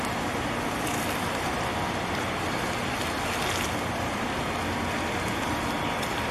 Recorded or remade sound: recorded